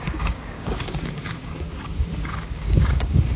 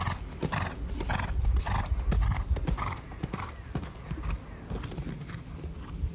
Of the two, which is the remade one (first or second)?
first